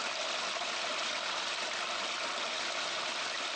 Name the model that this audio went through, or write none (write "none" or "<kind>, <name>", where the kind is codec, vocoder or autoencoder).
none